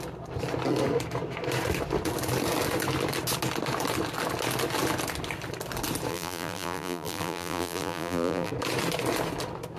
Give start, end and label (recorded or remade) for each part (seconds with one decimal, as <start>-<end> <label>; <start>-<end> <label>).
0.0-6.1 recorded; 6.1-8.5 remade; 8.5-9.8 recorded